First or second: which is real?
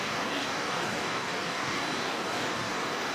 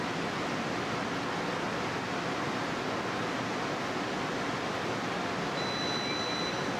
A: second